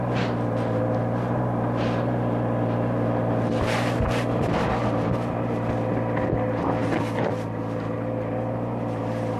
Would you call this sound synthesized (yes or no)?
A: no